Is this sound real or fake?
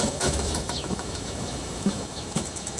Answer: fake